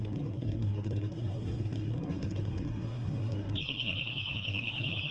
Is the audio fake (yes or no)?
yes